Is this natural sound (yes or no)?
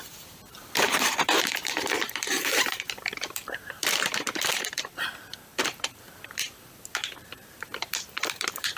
no